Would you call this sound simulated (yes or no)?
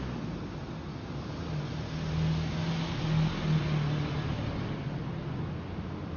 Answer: no